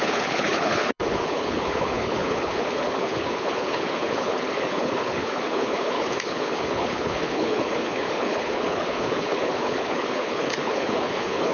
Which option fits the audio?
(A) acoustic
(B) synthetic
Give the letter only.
B